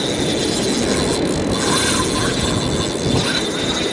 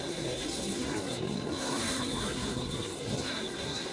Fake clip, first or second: second